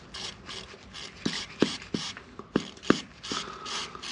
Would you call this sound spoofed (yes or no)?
no